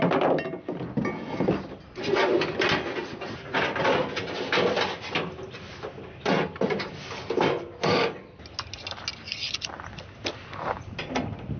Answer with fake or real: real